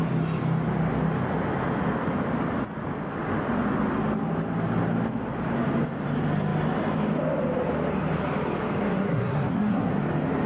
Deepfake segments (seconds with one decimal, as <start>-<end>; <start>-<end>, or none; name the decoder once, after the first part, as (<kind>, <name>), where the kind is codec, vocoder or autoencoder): 8.8-9.9 (codec, SNAC)